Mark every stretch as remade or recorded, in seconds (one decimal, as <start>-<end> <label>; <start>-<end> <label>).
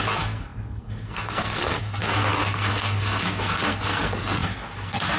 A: 0.0-5.2 remade